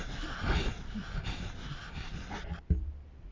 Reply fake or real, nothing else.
real